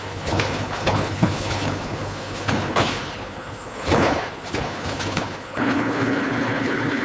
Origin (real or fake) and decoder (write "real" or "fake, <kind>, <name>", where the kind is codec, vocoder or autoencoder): fake, codec, HILCodec